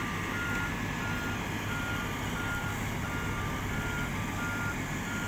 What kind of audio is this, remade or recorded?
recorded